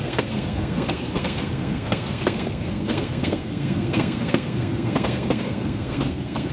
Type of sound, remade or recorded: remade